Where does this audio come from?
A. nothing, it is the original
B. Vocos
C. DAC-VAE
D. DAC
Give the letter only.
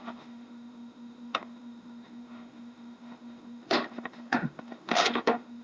C